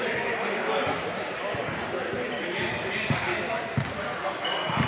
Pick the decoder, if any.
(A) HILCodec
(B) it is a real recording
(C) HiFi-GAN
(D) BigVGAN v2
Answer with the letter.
B